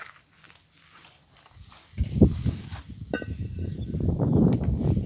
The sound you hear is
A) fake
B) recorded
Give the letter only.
A